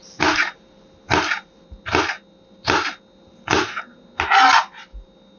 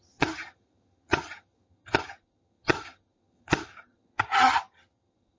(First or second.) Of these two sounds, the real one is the first